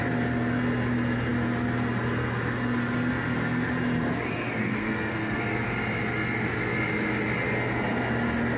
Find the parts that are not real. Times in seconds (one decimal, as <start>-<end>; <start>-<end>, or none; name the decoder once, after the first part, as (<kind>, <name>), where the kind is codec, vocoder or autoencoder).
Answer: 4.6-5.4 (codec, SNAC)